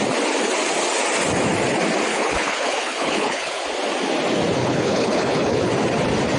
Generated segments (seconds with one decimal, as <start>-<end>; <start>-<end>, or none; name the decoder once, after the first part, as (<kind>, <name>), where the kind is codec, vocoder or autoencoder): 2.1-3.6 (codec, HILCodec); 4.6-5.7